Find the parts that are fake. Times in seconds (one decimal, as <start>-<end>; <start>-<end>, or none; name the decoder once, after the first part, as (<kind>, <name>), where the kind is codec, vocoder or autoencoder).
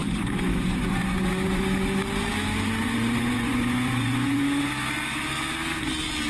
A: 0.0-1.6 (vocoder, Vocos); 2.8-4.7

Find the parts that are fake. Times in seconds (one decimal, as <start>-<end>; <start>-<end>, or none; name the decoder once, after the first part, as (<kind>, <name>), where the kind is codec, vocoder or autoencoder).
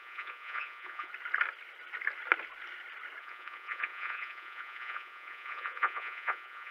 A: 0.0-1.1 (vocoder, Vocos); 3.2-6.7